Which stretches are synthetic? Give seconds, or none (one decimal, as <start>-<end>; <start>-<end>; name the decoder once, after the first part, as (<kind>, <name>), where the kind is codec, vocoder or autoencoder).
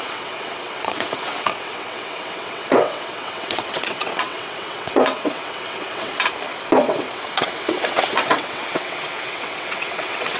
0.0-6.1 (vocoder, WaveNeXt); 6.8-10.4